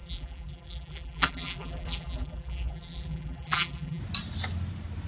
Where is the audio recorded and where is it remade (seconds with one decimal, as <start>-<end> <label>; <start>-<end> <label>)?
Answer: 0.0-4.0 remade; 4.0-5.1 recorded